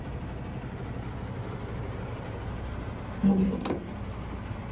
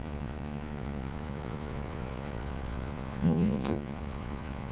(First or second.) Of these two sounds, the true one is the first